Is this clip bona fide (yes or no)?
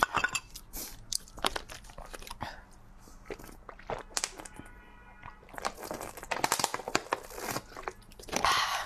yes